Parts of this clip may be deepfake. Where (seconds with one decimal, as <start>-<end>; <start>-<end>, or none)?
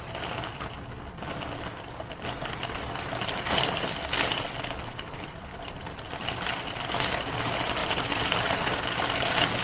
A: none